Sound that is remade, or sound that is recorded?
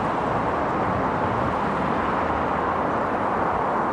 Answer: recorded